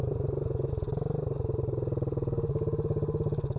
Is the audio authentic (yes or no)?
yes